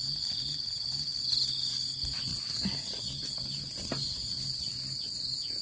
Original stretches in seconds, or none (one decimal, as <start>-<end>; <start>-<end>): 0.0-5.6